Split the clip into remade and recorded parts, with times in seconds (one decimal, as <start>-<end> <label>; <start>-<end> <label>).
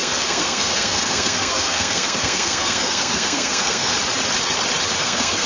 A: 0.0-3.9 remade; 3.9-5.0 recorded; 5.0-5.5 remade